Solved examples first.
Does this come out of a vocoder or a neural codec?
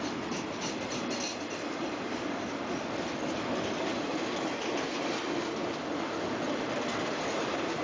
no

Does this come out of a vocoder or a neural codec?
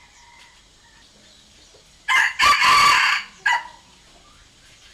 no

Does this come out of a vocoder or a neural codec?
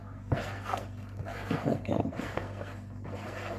yes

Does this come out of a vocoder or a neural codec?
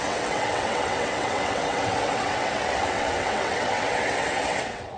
yes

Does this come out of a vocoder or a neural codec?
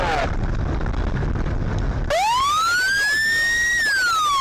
no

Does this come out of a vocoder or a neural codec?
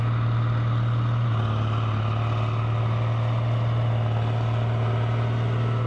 no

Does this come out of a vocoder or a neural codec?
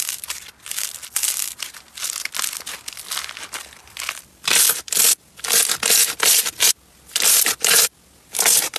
no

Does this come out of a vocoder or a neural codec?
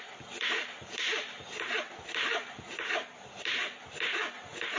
no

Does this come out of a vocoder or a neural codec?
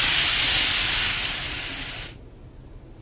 no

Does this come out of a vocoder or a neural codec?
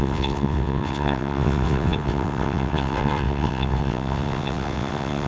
yes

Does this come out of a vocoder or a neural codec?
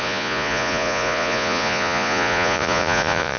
yes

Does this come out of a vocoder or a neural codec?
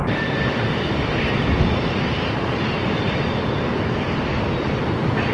no